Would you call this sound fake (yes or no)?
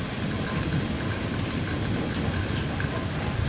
no